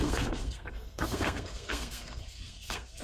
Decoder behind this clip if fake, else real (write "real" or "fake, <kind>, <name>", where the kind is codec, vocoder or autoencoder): fake, codec, SNAC